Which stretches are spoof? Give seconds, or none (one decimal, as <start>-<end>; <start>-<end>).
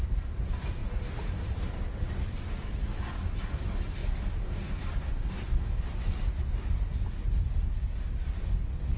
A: 0.8-1.7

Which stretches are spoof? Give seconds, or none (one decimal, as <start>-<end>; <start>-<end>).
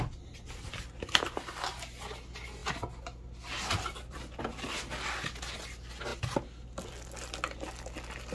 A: none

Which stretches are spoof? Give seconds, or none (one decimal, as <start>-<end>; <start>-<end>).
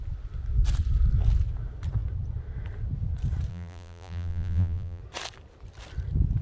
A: 3.5-5.0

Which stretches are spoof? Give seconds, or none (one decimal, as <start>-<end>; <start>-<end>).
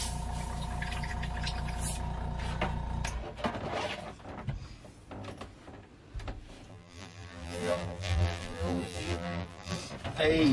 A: 6.7-9.8